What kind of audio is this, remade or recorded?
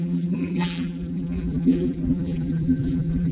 remade